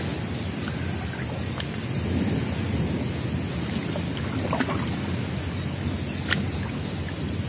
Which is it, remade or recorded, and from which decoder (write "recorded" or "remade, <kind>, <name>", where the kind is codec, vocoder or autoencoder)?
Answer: recorded